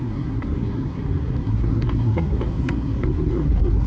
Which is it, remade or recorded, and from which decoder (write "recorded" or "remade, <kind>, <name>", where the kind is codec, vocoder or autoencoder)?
remade, codec, SNAC